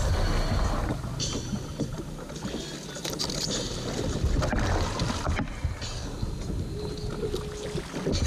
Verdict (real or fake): real